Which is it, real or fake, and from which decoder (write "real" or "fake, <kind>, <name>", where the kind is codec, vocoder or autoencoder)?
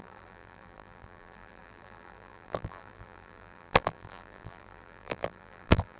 fake, vocoder, BigVGAN v2